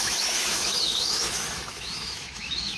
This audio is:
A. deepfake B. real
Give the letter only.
A